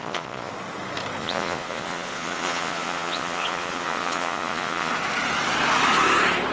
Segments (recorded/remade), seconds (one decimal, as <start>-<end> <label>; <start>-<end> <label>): 0.0-0.5 remade; 0.5-1.2 recorded; 1.2-4.9 remade; 4.9-6.5 recorded